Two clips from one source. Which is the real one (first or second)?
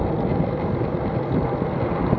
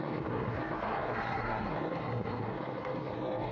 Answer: first